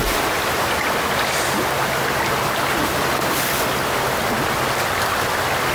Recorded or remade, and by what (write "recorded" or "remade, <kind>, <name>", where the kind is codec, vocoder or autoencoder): recorded